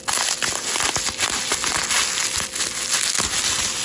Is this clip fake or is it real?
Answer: real